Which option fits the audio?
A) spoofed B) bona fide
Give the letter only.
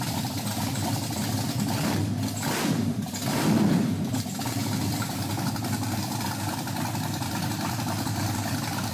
A